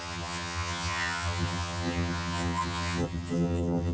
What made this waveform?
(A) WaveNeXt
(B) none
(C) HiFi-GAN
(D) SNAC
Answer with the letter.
C